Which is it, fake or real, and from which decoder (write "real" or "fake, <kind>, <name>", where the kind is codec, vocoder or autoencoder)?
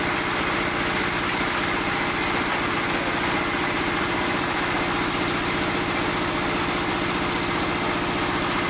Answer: real